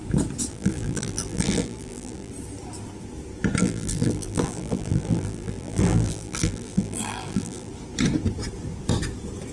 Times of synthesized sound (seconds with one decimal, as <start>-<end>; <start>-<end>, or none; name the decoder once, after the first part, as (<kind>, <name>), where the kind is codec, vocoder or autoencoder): 0.5-2.3 (vocoder, BigVGAN v2); 3.6-7.7